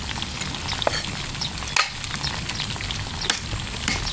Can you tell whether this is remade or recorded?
recorded